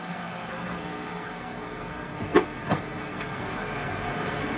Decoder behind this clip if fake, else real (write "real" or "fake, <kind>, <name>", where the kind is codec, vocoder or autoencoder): fake, codec, SNAC